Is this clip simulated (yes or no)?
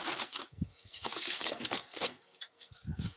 yes